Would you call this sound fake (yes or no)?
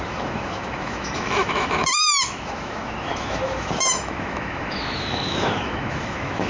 yes